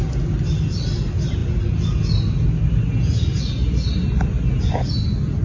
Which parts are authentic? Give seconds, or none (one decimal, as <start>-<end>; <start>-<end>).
0.0-5.4

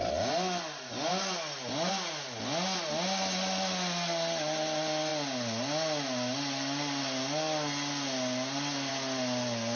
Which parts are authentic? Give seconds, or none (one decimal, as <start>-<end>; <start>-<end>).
0.0-9.8